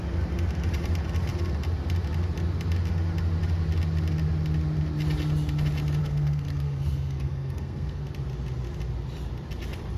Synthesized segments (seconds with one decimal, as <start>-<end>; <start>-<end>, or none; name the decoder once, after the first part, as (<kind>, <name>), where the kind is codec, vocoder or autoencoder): 6.0-8.0 (codec, SNAC)

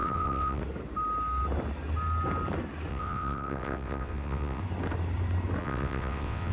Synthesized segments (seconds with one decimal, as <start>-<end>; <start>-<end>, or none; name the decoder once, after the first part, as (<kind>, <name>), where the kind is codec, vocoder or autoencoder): 0.0-0.6 (vocoder, WaveNeXt); 2.9-4.6; 5.6-6.5

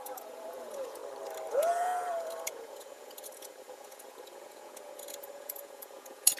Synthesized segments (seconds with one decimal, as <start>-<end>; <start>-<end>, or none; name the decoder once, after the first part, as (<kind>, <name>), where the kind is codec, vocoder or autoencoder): 0.0-1.0 (vocoder, Vocos); 1.5-6.4

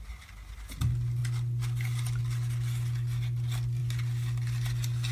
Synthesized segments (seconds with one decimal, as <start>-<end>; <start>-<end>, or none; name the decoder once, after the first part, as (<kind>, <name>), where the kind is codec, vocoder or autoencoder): none

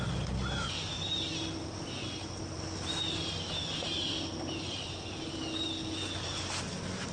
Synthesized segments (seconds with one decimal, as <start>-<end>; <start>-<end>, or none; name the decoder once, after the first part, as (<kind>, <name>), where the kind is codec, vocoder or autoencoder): none

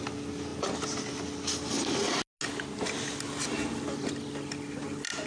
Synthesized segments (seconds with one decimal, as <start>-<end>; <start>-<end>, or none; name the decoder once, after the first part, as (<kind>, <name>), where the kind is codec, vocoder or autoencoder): none

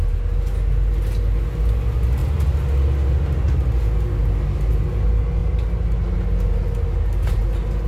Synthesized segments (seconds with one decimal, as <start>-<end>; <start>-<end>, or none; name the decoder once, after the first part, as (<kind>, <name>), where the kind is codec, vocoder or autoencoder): none

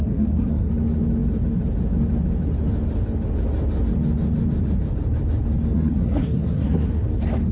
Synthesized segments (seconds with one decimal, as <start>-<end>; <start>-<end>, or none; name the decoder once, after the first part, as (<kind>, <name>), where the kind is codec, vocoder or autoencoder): 0.0-0.7 (codec, SNAC); 5.7-6.9